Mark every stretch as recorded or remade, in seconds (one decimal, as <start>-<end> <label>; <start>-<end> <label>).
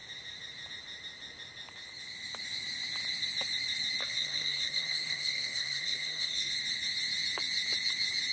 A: 0.0-4.0 recorded; 4.0-6.5 remade; 6.5-8.3 recorded